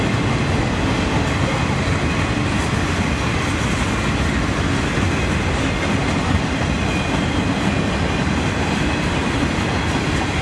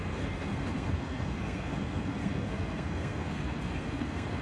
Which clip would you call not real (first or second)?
second